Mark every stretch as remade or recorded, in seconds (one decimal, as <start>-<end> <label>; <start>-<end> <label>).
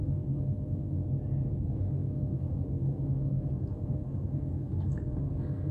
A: 0.0-1.0 remade; 1.0-1.6 recorded; 1.6-5.7 remade